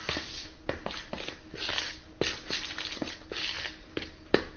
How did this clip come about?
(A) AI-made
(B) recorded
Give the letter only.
B